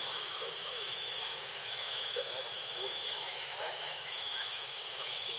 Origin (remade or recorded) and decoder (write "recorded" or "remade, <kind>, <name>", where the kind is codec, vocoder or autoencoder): remade, autoencoder, DAC-VAE